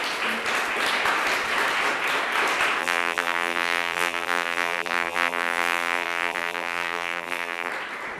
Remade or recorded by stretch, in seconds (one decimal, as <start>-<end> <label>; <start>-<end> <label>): 0.0-2.8 recorded; 2.8-7.7 remade; 7.7-8.2 recorded